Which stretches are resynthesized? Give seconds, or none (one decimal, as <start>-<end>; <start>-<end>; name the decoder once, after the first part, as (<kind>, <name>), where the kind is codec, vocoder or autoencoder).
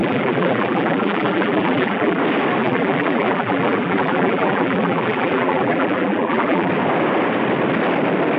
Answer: 0.0-2.2 (vocoder, BigVGAN v2); 2.6-6.7